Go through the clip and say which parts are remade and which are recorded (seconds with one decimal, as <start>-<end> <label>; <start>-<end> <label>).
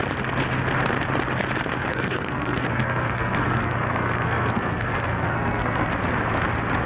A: 0.0-1.9 recorded; 1.9-5.9 remade; 5.9-6.9 recorded